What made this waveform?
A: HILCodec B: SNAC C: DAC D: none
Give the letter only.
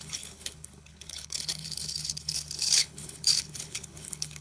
A